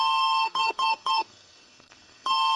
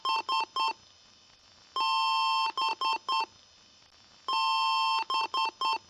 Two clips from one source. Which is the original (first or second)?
second